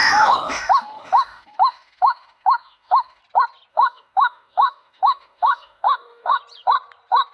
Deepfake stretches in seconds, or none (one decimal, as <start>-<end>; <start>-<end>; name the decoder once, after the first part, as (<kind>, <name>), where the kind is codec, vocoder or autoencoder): 0.0-3.2 (autoencoder, DAC-VAE); 3.7-6.4